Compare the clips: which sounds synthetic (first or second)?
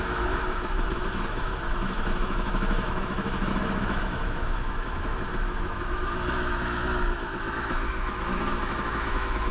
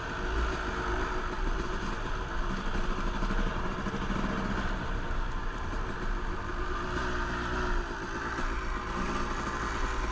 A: first